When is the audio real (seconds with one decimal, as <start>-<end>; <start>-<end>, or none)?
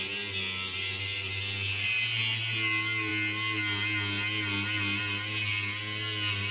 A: 0.0-6.5